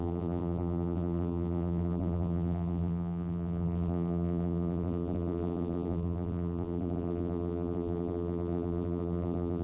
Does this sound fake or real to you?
fake